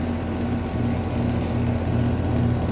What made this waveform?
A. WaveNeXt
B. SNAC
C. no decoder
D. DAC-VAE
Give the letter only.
C